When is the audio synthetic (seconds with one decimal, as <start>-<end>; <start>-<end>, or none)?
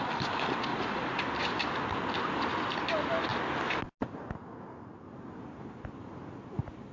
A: 0.7-1.2